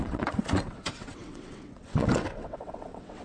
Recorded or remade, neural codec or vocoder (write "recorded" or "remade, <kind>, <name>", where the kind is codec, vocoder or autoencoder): remade, vocoder, WaveNeXt